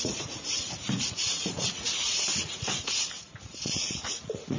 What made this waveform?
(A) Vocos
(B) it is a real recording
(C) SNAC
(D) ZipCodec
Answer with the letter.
A